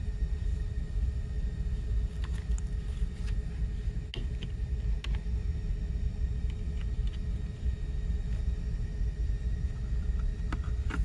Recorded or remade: recorded